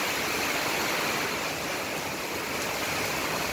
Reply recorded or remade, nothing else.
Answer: recorded